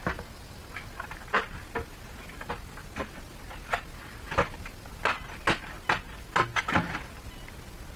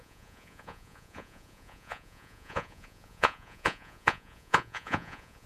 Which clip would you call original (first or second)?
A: first